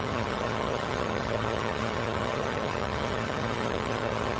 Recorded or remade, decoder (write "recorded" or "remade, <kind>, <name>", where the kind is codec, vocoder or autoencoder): remade, vocoder, HiFi-GAN